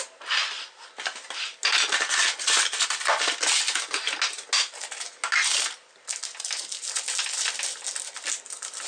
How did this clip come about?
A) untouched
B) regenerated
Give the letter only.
A